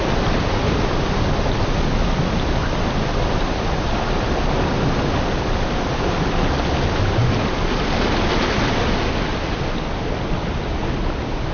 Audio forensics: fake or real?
real